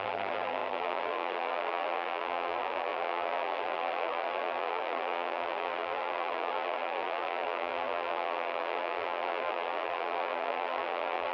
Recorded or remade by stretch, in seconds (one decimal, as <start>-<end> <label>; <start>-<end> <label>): 0.0-11.3 remade